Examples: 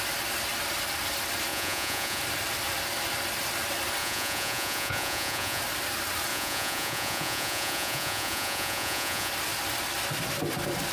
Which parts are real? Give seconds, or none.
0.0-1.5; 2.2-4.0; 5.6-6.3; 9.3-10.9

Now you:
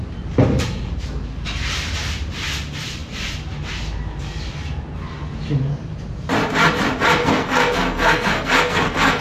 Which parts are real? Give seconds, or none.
0.0-7.2

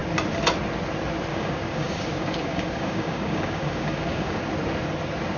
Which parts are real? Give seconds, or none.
0.0-1.3; 4.4-5.4

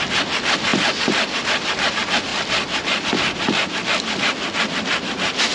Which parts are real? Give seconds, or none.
0.0-2.3; 3.0-5.5

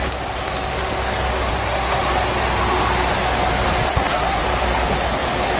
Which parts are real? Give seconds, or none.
0.0-1.5; 2.0-3.9; 4.4-5.6